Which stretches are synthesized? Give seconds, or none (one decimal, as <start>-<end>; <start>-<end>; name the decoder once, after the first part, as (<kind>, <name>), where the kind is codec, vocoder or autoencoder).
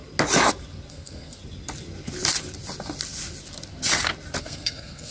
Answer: 0.9-1.4 (codec, SNAC); 4.4-5.1